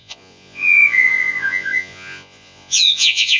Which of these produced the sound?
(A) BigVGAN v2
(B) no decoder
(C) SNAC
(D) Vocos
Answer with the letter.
D